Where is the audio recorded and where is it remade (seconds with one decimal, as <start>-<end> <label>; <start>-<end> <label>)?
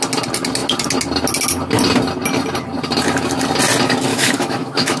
0.0-4.1 recorded; 4.1-5.0 remade